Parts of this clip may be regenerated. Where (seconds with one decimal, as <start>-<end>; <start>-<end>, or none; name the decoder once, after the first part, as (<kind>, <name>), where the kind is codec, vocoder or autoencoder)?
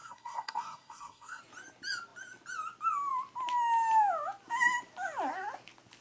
0.0-1.4 (codec, SNAC)